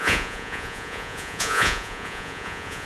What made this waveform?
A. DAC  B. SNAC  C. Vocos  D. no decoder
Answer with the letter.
C